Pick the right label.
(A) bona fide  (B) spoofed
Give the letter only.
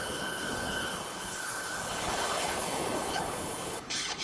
B